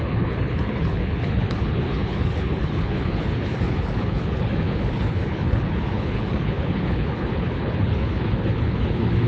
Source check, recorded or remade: remade